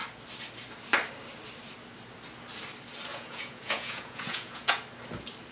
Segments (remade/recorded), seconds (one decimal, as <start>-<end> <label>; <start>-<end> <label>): 0.0-3.1 recorded; 3.1-4.8 remade; 4.8-5.5 recorded